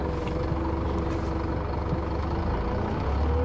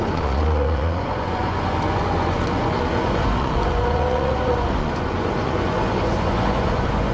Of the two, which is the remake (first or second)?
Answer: second